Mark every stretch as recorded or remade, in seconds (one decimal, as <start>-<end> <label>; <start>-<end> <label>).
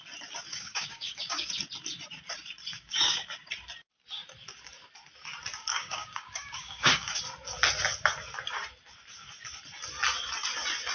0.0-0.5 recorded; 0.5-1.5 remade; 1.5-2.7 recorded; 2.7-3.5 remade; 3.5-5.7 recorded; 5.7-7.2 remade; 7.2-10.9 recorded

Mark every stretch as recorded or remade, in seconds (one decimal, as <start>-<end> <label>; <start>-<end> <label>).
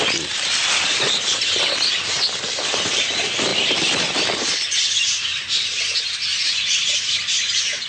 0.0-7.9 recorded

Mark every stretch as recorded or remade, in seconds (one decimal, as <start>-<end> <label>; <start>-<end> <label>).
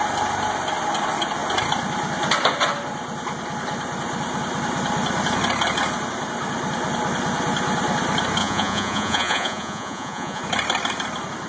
0.0-8.4 recorded; 8.4-10.4 remade; 10.4-11.5 recorded